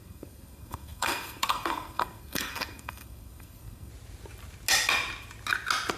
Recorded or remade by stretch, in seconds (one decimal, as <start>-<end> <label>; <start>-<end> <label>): 0.0-3.9 remade; 3.9-6.0 recorded